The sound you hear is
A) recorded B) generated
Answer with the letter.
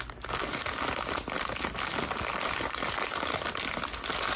A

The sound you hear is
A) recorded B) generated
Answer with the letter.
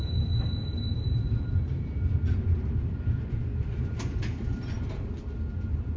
A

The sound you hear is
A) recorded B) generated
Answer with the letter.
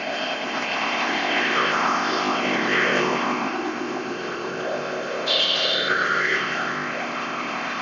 B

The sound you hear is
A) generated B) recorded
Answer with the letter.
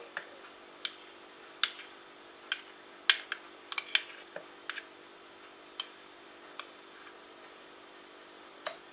B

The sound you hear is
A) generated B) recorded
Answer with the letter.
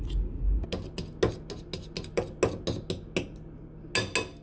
B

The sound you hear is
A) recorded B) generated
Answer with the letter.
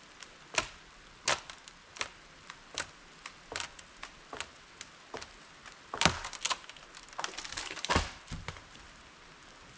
A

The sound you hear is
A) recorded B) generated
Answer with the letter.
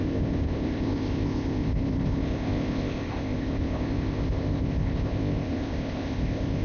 B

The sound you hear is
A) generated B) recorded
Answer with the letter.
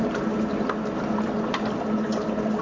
B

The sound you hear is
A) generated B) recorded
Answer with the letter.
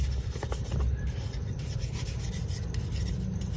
B